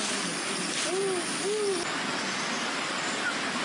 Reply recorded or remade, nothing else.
recorded